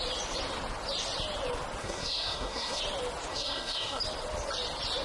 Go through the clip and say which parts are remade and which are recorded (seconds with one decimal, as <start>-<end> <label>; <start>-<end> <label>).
0.0-1.8 recorded; 1.8-2.8 remade; 2.8-3.3 recorded; 3.3-4.0 remade; 4.0-5.0 recorded